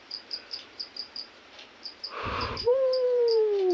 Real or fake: fake